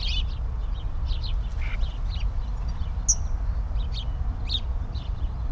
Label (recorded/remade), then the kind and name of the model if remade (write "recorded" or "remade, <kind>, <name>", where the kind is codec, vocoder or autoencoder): recorded